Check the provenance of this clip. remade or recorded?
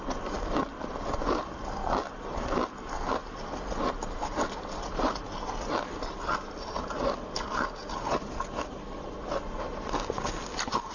recorded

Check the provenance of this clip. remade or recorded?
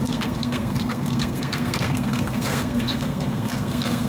remade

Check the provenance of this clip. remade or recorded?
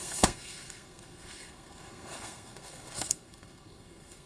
remade